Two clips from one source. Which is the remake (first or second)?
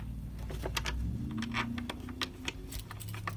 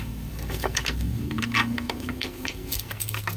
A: second